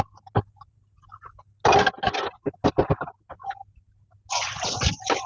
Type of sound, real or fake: real